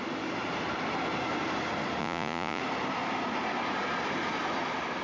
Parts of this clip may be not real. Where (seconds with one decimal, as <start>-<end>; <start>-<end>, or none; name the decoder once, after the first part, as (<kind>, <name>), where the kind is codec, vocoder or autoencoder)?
2.0-2.6 (vocoder, Vocos)